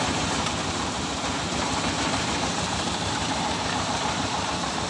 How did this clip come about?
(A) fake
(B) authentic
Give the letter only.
A